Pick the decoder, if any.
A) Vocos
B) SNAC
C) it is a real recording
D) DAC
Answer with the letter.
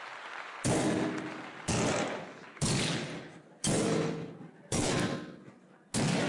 C